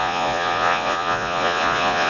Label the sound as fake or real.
fake